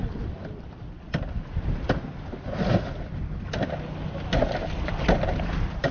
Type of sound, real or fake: real